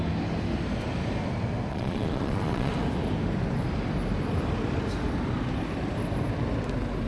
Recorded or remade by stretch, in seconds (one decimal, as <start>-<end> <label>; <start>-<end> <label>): 0.0-1.7 recorded; 1.7-2.7 remade; 2.7-7.1 recorded